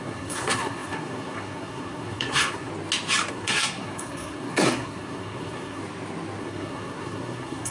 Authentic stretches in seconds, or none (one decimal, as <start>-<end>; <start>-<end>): 2.7-3.3; 5.8-6.4